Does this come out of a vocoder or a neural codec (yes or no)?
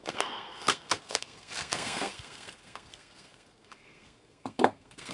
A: yes